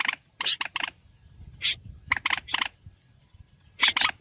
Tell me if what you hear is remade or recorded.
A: recorded